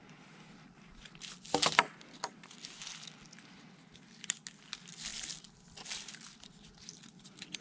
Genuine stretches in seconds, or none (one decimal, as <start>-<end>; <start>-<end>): 0.0-7.6